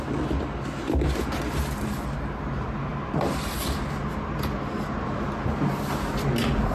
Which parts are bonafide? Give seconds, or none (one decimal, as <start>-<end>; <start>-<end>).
0.0-6.7

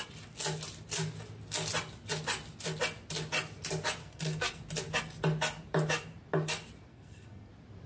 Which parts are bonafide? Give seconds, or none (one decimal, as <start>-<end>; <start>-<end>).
0.0-4.0; 4.6-6.9; 7.5-7.9

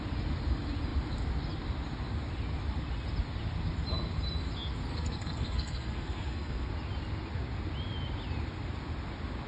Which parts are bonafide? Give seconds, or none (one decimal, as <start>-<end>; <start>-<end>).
0.0-4.9; 6.7-9.5

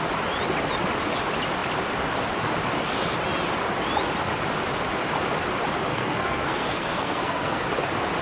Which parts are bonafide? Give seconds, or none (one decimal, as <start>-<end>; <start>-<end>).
0.0-5.9; 7.7-8.2

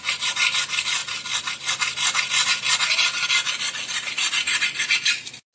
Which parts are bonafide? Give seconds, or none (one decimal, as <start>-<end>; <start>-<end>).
0.0-5.5

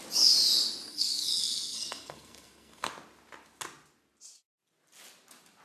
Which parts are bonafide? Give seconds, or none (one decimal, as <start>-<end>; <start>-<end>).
0.0-0.9; 2.9-5.6